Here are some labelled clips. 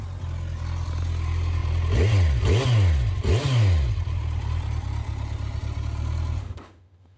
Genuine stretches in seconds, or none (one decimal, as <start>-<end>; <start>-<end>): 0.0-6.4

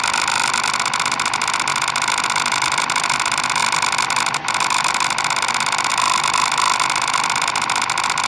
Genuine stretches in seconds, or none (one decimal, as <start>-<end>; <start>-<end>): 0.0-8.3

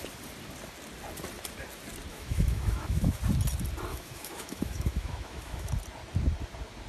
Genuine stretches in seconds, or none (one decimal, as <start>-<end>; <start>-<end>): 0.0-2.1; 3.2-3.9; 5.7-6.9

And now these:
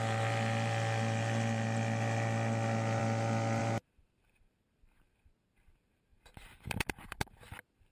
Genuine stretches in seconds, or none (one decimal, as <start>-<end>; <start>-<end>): 0.0-7.9